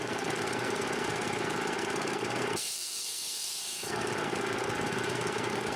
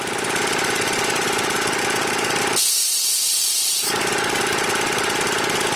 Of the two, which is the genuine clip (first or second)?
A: second